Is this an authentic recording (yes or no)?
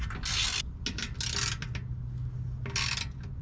yes